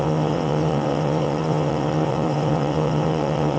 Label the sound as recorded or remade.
remade